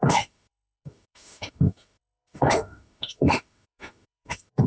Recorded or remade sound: remade